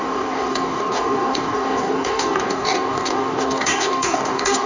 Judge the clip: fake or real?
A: fake